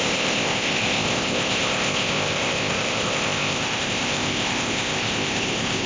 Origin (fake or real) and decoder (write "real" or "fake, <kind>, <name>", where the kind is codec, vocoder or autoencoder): fake, codec, ZipCodec